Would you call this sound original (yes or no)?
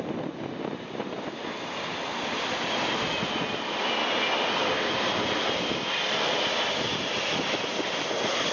yes